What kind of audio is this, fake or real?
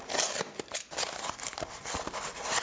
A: real